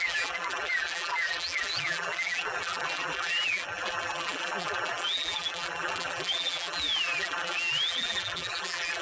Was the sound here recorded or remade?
remade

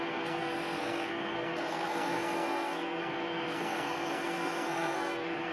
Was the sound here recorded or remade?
remade